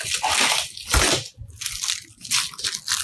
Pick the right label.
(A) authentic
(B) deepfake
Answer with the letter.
A